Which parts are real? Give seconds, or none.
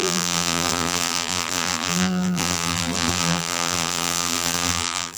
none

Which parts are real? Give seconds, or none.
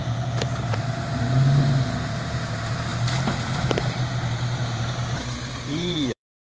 2.9-3.6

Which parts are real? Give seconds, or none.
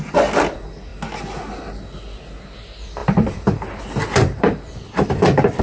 0.0-3.0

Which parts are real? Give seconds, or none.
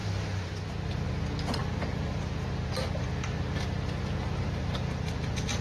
0.5-5.6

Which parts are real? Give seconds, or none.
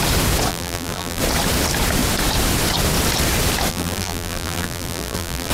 0.0-0.5; 1.2-3.7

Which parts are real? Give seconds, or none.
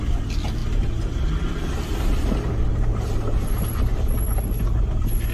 0.0-5.3